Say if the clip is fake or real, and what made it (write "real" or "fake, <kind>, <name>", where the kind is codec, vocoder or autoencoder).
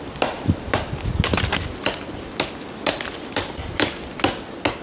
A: real